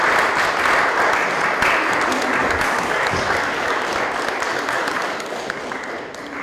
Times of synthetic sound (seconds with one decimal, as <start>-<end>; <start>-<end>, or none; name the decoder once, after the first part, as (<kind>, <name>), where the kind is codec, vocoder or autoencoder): 2.4-3.9 (codec, DAC); 4.5-5.6